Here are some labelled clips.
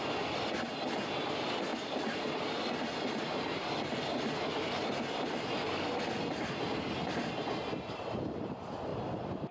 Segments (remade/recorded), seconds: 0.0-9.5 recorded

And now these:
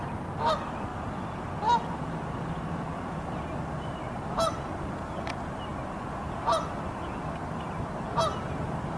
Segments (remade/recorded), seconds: 0.0-9.0 recorded

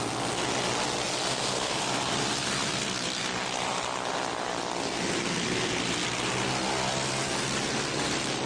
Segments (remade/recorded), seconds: 0.0-1.3 recorded; 1.3-1.8 remade; 1.8-8.5 recorded

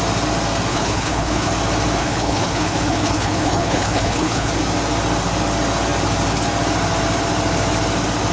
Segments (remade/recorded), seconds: 0.0-0.7 recorded; 0.7-1.5 remade; 1.5-2.0 recorded; 2.0-4.5 remade; 4.5-8.3 recorded

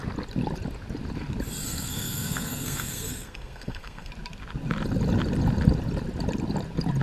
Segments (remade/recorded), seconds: 0.0-1.6 recorded; 1.6-4.1 remade; 4.1-7.0 recorded

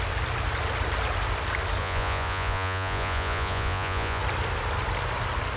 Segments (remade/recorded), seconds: 0.0-1.8 recorded; 1.8-4.2 remade; 4.2-5.6 recorded

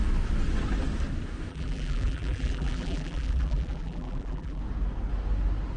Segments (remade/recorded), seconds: 0.0-1.5 recorded; 1.5-4.6 remade; 4.6-5.8 recorded

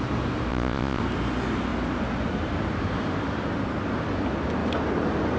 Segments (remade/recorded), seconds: 0.0-0.5 recorded; 0.5-1.0 remade; 1.0-5.4 recorded